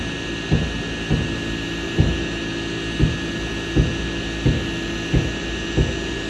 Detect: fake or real real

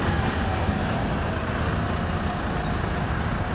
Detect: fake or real real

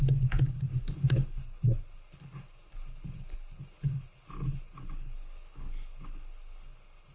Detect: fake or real fake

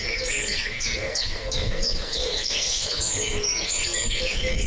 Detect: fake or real fake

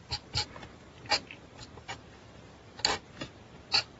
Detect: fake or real real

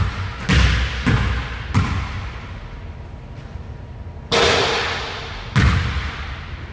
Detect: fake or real real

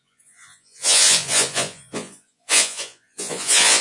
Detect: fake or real fake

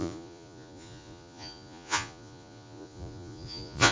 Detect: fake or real fake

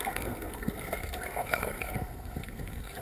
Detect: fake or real fake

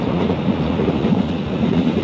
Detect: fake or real fake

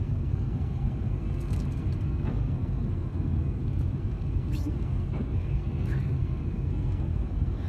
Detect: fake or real fake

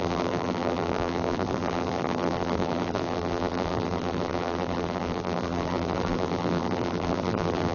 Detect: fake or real fake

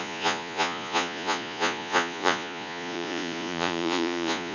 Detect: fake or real fake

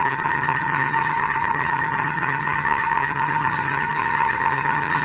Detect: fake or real fake